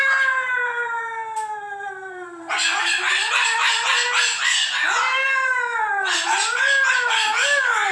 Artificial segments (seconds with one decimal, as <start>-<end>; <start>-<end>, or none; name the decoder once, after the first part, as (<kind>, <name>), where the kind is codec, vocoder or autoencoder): 0.0-4.0 (vocoder, BigVGAN v2)